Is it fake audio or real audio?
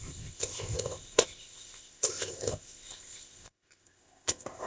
fake